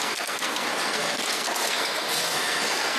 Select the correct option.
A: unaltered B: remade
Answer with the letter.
B